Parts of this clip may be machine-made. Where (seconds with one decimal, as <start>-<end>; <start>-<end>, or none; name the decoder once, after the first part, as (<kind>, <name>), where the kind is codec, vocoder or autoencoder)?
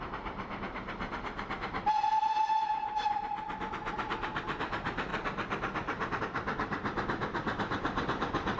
0.0-5.1 (vocoder, BigVGAN v2); 6.2-8.6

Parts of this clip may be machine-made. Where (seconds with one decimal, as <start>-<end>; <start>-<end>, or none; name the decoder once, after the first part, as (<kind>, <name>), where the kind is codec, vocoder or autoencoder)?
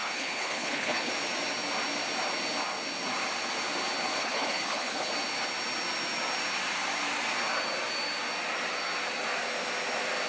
0.0-1.1 (codec, HILCodec); 4.2-5.1